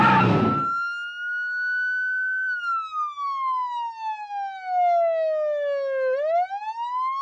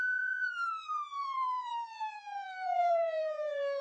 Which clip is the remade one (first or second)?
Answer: second